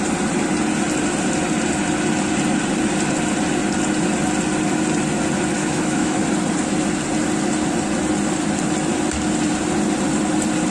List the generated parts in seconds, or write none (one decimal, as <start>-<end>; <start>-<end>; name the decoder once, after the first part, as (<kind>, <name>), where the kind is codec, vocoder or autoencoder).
5.6-6.2 (autoencoder, DAC-VAE)